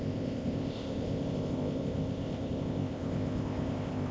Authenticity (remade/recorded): remade